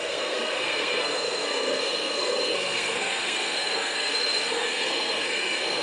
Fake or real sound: fake